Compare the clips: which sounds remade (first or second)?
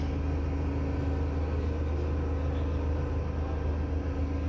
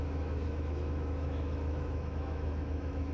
second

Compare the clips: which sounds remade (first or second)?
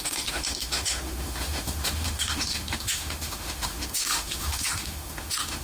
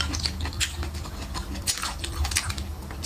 first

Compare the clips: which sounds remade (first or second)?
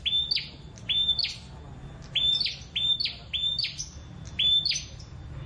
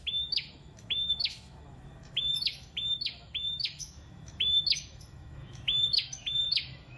second